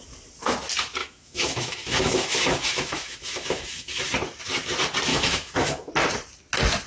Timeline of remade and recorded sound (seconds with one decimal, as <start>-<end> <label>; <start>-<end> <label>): 0.0-1.0 recorded; 1.0-4.0 remade; 4.0-5.1 recorded; 5.1-5.9 remade; 5.9-6.9 recorded